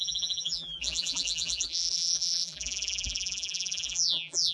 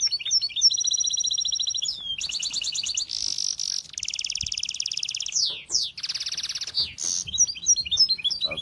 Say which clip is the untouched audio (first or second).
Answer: second